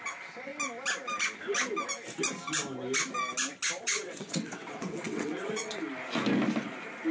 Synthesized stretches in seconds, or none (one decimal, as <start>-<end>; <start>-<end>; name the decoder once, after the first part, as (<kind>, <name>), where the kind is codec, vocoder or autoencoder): 0.0-0.5 (vocoder, WaveNeXt); 3.8-5.8